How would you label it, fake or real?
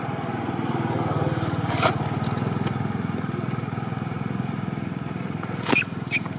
real